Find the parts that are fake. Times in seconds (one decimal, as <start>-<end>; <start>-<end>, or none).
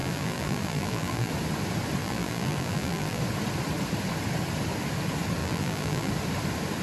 0.0-1.3; 2.0-3.2; 5.4-6.1